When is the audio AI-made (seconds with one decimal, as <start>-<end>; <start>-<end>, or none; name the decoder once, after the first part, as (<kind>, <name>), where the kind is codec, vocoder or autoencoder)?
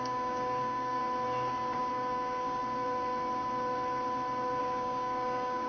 0.0-1.0 (codec, DAC); 1.9-2.6; 4.6-5.7